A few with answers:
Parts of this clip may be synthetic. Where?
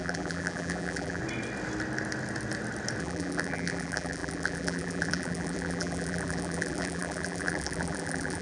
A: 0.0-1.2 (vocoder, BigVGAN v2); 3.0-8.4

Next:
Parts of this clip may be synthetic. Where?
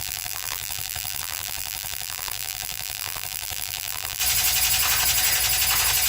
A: 0.0-4.2 (vocoder, BigVGAN v2)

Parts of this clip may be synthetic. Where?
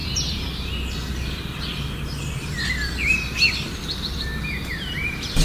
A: 0.9-5.4 (vocoder, BigVGAN v2)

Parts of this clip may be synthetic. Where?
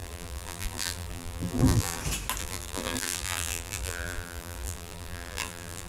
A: 0.0-2.0 (vocoder, BigVGAN v2); 2.4-5.9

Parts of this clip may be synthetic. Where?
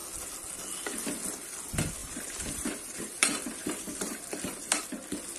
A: 2.0-4.8 (vocoder, BigVGAN v2)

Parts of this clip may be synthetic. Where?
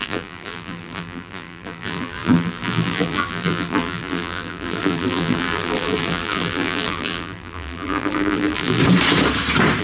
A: 0.0-8.8 (vocoder, BigVGAN v2)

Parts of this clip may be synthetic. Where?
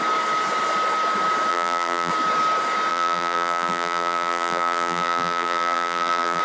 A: 1.5-2.1 (vocoder, BigVGAN v2); 2.9-6.4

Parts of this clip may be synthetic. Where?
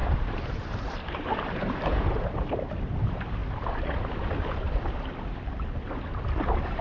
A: 0.0-3.4 (vocoder, BigVGAN v2)